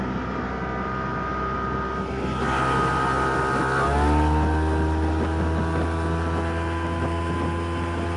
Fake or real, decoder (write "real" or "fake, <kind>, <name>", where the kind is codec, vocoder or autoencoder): real